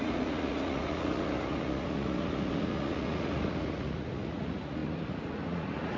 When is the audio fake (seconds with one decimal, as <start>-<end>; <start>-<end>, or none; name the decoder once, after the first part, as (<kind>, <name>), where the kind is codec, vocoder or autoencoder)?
0.0-6.0 (vocoder, Vocos)